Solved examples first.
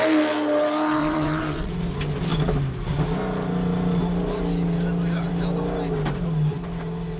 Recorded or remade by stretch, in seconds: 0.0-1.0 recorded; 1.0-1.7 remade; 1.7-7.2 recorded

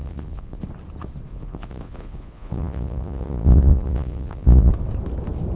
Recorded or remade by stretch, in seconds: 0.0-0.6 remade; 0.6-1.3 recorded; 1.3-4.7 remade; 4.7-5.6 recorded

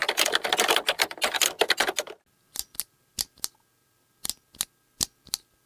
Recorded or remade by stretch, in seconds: 0.0-5.7 recorded

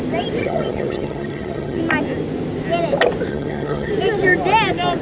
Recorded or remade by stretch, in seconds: 0.0-0.4 recorded; 0.4-1.8 remade; 1.8-3.3 recorded; 3.3-3.9 remade; 3.9-5.0 recorded

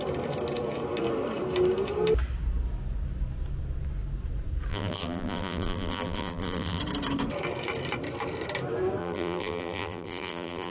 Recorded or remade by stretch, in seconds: 0.0-4.7 recorded; 4.7-6.8 remade; 6.8-9.0 recorded; 9.0-10.7 remade

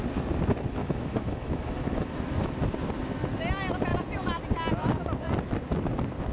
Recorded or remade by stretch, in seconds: 0.0-0.8 recorded; 0.8-2.5 remade; 2.5-6.3 recorded